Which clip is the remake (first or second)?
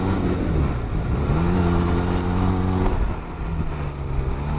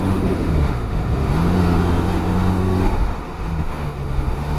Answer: second